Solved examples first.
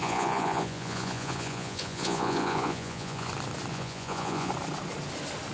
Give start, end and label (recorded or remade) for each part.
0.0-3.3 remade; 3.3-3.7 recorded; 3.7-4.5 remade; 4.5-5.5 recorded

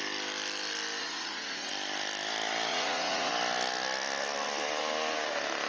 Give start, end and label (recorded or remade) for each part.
0.0-1.0 recorded; 1.0-1.7 remade; 1.7-2.7 recorded; 2.7-3.3 remade; 3.3-5.7 recorded

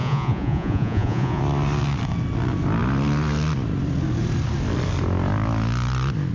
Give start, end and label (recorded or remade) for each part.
0.0-1.4 remade; 1.4-6.3 recorded

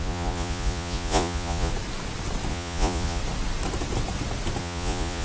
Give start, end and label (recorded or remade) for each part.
0.0-1.7 remade; 1.7-2.5 recorded; 2.5-3.2 remade; 3.2-4.6 recorded; 4.6-5.2 remade

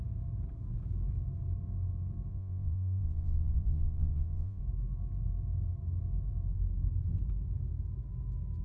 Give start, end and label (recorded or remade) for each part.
0.0-2.3 recorded; 2.3-4.6 remade; 4.6-8.6 recorded

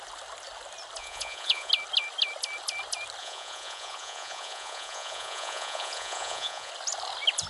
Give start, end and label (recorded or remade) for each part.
0.0-1.0 recorded; 1.0-1.7 remade; 1.7-3.2 recorded; 3.2-6.7 remade; 6.7-7.5 recorded

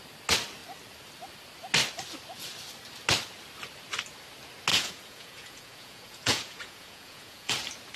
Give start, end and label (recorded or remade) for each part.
0.0-4.7 recorded; 4.7-7.5 remade; 7.5-8.0 recorded